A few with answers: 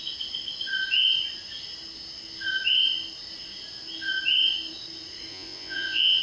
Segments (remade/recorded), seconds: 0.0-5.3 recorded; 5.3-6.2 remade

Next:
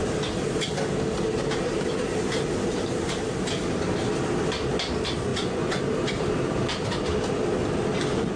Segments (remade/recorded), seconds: 0.0-5.3 recorded; 5.3-5.8 remade; 5.8-8.4 recorded

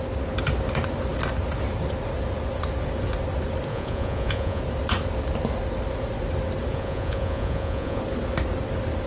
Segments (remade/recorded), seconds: 0.0-3.7 recorded; 3.7-4.6 remade; 4.6-6.7 recorded; 6.7-8.0 remade; 8.0-9.1 recorded

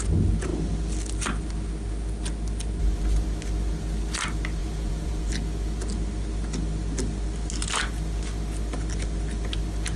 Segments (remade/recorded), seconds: 0.0-4.6 recorded; 4.6-5.3 remade; 5.3-10.0 recorded

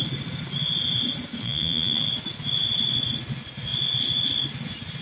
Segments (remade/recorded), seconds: 0.0-1.4 recorded; 1.4-2.1 remade; 2.1-5.0 recorded

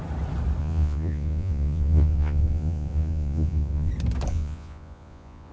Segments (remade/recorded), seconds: 0.0-0.6 recorded; 0.6-3.9 remade; 3.9-4.3 recorded; 4.3-5.5 remade

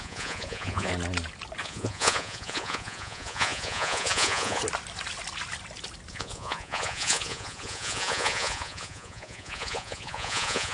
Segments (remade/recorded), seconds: 0.0-0.9 remade; 0.9-1.6 recorded; 1.6-4.6 remade; 4.6-6.1 recorded; 6.1-10.7 remade

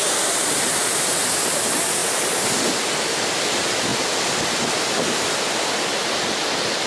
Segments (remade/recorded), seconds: 0.0-6.9 recorded